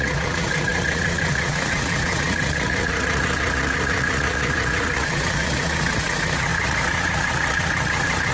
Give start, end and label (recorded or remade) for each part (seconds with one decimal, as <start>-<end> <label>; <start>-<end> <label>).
0.0-8.3 remade